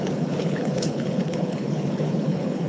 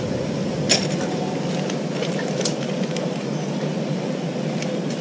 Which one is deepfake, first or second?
first